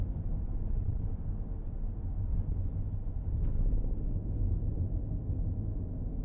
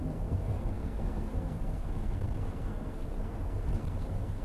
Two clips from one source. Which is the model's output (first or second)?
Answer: second